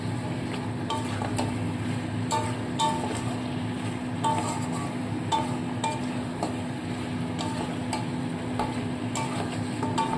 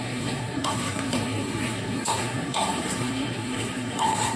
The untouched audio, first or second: first